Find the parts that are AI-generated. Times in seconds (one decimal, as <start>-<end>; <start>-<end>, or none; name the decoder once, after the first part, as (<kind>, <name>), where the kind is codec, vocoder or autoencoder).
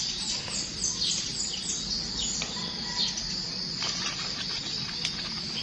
none